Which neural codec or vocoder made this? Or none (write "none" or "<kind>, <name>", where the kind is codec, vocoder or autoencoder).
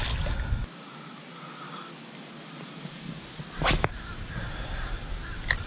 none